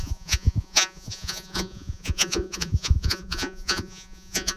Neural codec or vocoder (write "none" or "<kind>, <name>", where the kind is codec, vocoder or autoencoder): vocoder, Vocos